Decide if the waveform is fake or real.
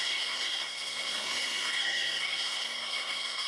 fake